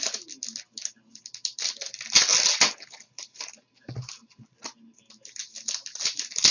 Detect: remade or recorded recorded